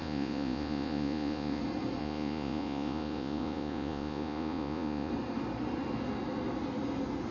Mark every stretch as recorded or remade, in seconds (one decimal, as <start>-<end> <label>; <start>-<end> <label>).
0.0-1.6 remade; 1.6-2.0 recorded; 2.0-5.1 remade; 5.1-7.3 recorded